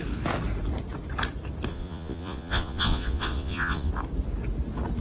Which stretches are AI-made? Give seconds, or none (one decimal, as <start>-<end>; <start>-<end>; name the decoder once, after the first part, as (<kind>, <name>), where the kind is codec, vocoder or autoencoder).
1.7-3.9 (vocoder, Vocos)